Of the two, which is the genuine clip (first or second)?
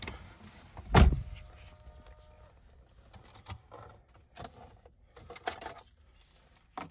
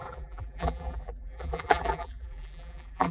first